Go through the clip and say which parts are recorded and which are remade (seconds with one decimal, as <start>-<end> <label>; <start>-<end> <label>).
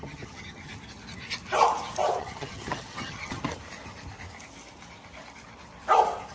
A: 0.0-0.7 remade; 0.7-2.2 recorded; 2.2-3.4 remade; 3.4-6.3 recorded